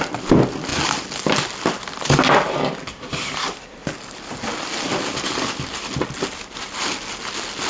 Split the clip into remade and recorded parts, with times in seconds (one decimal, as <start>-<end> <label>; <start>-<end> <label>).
0.0-7.7 recorded

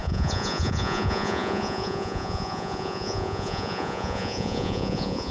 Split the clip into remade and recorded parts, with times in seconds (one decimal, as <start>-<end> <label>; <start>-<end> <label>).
0.0-5.3 remade